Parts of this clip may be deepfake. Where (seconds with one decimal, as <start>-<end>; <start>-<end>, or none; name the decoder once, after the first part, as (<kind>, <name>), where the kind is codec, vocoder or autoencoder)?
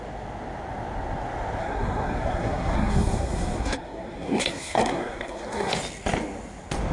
1.6-5.7 (codec, SNAC)